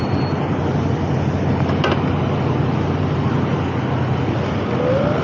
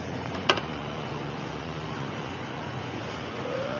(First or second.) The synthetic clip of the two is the second